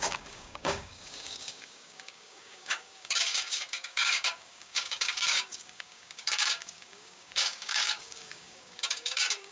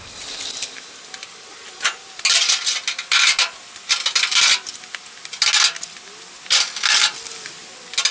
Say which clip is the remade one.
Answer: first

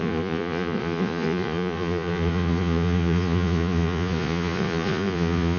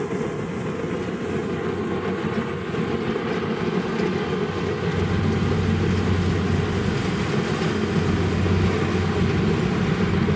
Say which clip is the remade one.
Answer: first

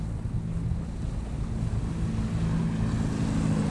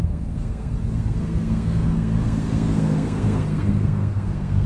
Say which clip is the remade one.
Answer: second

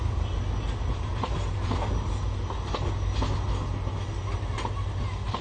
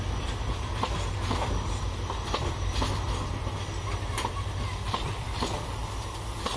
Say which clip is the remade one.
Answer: second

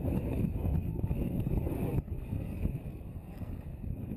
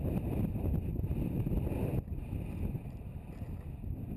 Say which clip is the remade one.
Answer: first